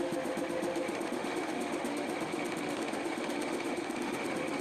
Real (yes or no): no